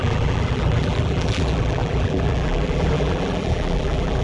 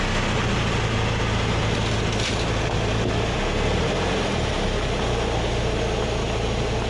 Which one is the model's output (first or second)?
first